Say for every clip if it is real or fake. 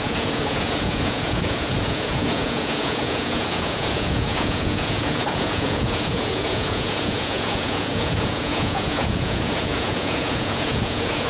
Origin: fake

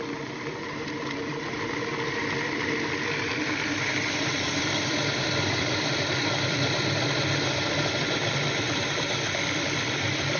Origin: fake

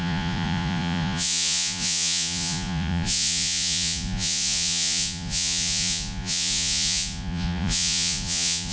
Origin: fake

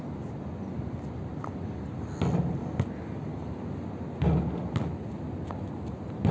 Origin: real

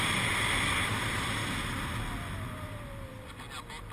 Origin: real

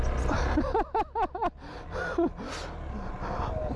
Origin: real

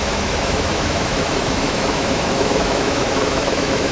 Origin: fake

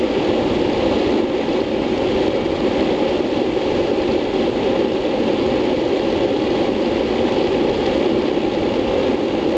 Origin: real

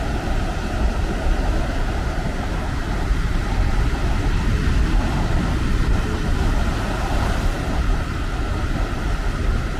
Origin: real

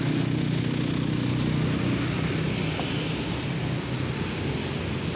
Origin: real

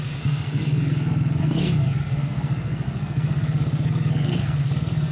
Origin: fake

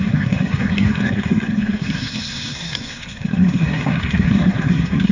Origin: fake